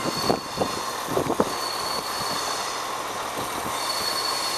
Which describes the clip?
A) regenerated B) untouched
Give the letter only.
B